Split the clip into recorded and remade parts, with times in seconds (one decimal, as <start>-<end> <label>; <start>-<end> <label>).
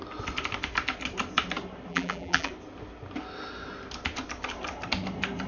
0.0-1.9 recorded; 1.9-2.5 remade; 2.5-5.5 recorded